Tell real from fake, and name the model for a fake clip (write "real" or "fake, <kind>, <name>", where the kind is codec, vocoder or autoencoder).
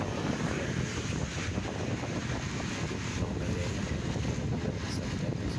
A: real